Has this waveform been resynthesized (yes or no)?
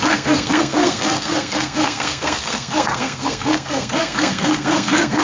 yes